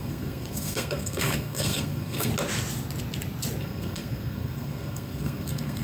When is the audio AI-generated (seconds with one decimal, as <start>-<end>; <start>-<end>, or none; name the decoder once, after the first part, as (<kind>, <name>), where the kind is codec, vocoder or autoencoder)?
0.0-2.3 (codec, SNAC); 3.6-5.8